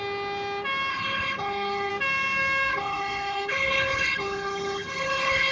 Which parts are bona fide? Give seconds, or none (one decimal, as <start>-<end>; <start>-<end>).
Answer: 0.0-0.9; 1.9-2.7